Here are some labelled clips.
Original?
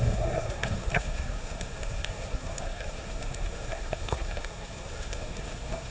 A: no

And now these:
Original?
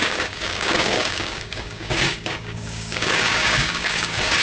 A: no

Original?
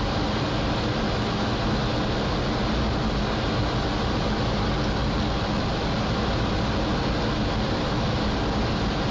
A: yes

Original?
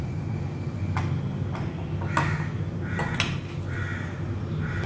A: yes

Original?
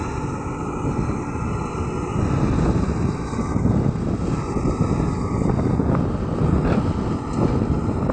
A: yes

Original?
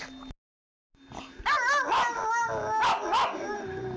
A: yes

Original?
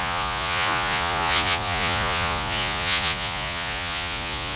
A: no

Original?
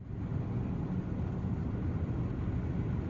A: yes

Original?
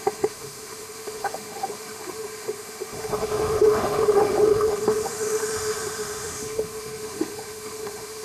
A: no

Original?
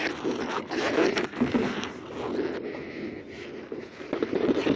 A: yes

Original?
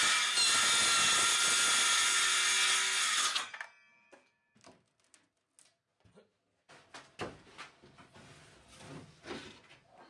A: yes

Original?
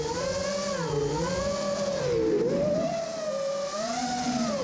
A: yes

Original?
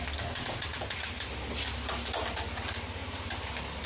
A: yes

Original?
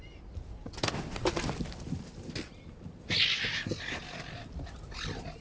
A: yes